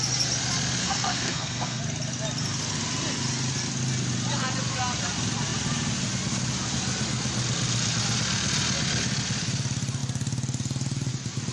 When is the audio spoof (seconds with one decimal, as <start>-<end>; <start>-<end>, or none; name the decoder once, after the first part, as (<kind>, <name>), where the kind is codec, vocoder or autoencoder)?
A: 0.8-1.8 (codec, SNAC)